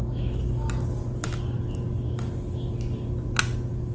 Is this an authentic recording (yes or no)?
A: yes